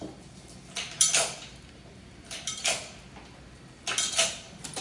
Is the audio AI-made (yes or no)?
no